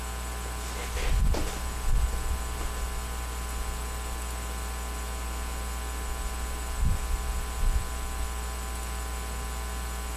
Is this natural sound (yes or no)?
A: yes